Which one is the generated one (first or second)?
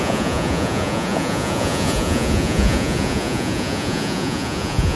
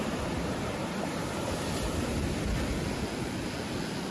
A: first